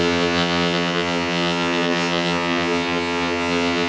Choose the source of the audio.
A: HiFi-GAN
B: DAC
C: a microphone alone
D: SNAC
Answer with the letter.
A